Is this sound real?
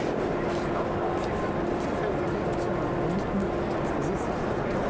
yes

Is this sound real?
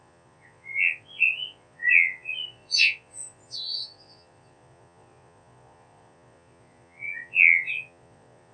no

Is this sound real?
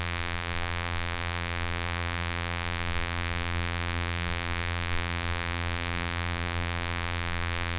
no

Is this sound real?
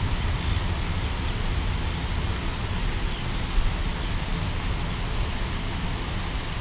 yes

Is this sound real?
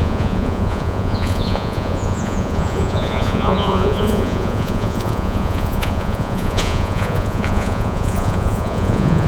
no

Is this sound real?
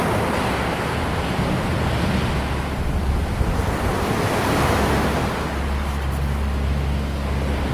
yes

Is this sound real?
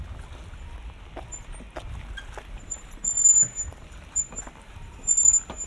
yes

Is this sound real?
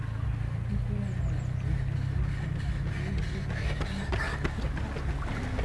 yes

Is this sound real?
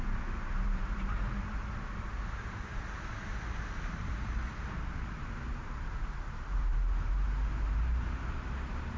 no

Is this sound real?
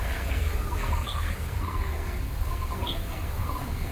no